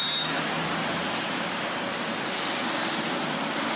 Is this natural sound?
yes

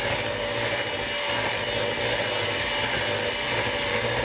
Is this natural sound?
yes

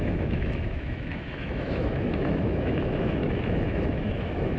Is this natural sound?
no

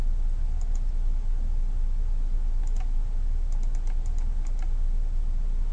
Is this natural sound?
yes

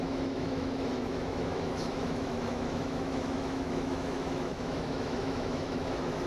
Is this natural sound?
no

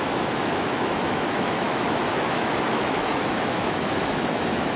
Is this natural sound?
no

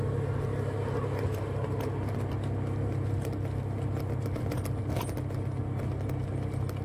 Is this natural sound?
yes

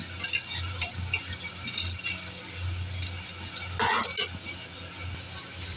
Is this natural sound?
yes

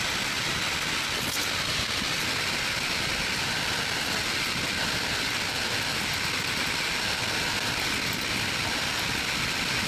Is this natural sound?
yes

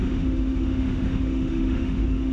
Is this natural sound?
no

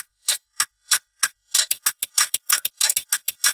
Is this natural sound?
no